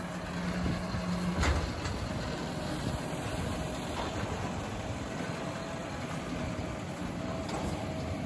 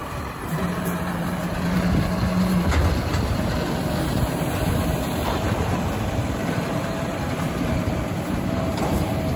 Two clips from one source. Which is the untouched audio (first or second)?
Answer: first